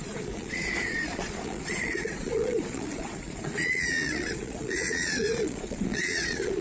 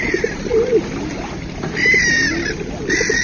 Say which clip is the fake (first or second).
first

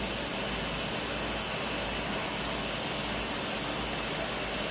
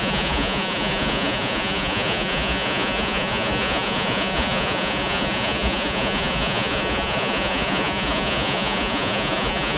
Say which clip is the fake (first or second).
second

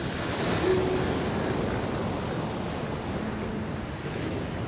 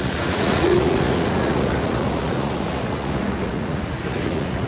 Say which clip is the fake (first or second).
second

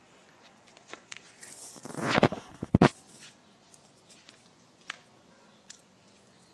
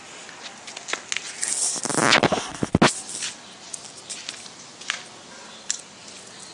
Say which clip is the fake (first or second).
first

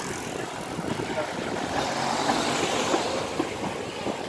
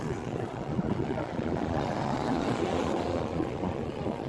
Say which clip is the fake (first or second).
second